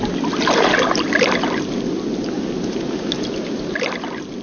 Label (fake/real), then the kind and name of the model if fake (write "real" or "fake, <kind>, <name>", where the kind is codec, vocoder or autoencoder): real